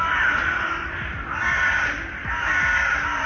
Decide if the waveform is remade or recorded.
recorded